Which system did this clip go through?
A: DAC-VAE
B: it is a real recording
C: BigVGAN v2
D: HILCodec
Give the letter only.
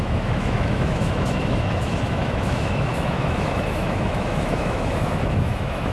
A